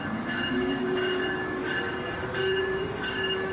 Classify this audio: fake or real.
fake